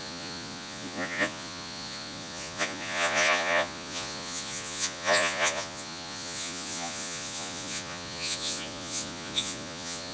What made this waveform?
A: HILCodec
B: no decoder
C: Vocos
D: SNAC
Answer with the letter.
C